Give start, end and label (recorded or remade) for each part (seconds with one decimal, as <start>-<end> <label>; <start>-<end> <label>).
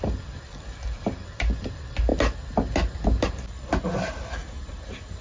0.0-2.1 remade; 2.1-3.3 recorded; 3.3-4.4 remade; 4.4-5.2 recorded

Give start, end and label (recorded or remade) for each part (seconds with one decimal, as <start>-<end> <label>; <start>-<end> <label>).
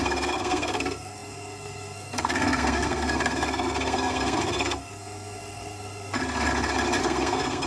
0.0-6.2 remade; 6.2-7.0 recorded; 7.0-7.7 remade